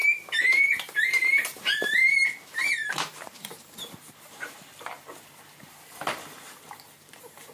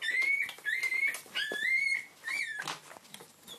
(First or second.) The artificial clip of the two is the first